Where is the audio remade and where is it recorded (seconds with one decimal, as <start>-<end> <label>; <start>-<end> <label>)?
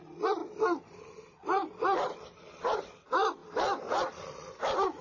0.0-5.0 recorded